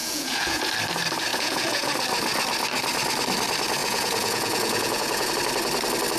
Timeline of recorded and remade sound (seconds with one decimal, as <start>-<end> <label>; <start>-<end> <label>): 0.0-0.7 remade; 0.7-1.3 recorded; 1.3-1.9 remade; 1.9-3.8 recorded; 3.8-5.3 remade; 5.3-6.2 recorded